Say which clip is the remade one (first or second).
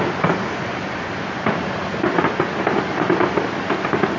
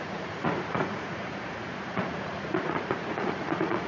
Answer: second